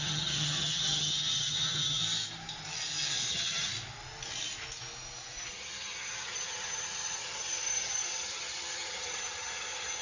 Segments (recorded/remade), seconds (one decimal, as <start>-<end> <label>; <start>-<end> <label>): 0.0-2.0 remade; 2.0-3.3 recorded; 3.3-3.7 remade; 3.7-5.5 recorded; 5.5-10.0 remade